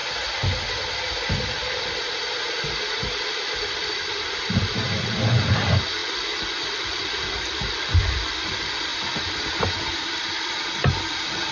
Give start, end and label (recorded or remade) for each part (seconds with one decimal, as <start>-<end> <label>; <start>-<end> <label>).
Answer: 0.0-3.2 recorded; 3.2-8.9 remade; 8.9-10.0 recorded; 10.0-11.5 remade